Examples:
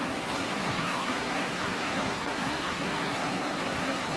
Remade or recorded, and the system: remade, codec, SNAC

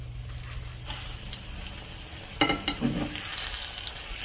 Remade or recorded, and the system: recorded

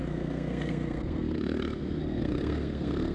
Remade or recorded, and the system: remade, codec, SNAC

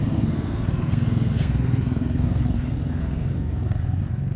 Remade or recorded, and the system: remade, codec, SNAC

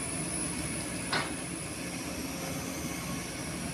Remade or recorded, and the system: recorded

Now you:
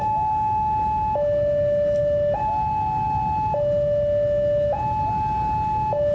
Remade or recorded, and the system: recorded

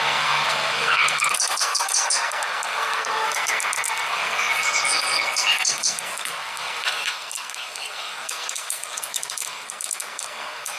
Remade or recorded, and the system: remade, codec, SNAC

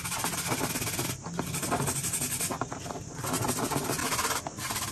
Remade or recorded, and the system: recorded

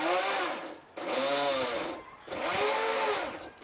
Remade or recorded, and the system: recorded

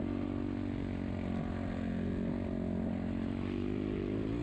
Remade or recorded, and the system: recorded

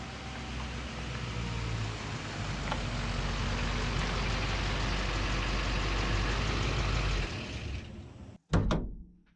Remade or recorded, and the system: recorded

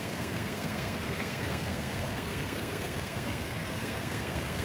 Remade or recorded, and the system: remade, codec, SNAC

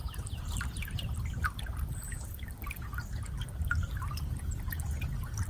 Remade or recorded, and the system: recorded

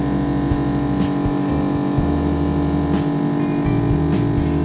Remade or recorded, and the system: recorded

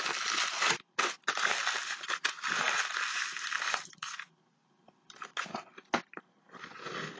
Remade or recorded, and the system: recorded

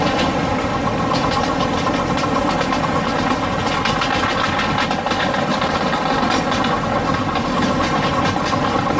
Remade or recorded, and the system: recorded